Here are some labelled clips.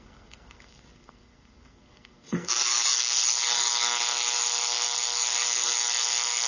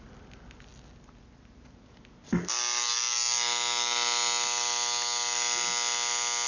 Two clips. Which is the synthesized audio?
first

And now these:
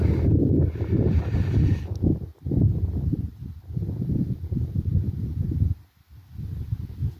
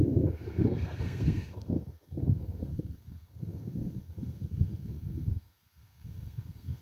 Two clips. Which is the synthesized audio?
second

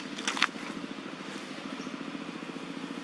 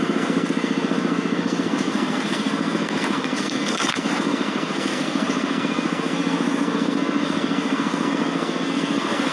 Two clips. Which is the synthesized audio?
second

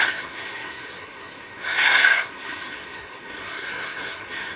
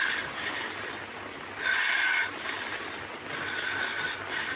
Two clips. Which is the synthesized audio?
first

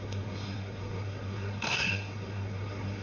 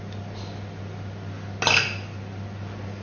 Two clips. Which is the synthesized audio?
first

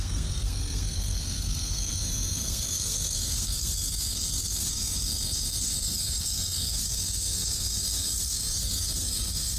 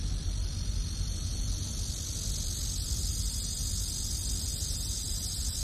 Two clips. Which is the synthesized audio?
first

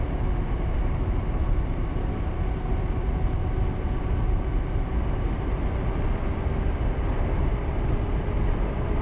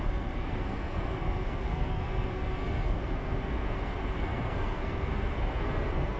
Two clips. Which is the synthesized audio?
second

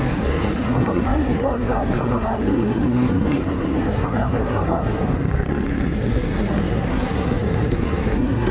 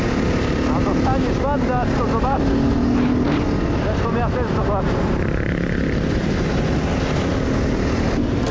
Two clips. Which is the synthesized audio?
first